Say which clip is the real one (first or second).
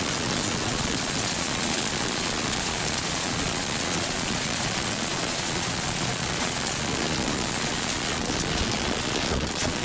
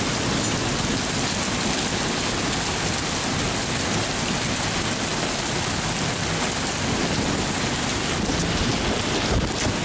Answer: second